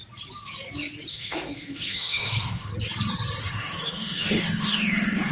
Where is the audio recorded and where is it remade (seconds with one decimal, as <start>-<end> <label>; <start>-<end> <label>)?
0.0-1.1 recorded; 1.1-2.7 remade; 2.7-3.4 recorded; 3.4-5.3 remade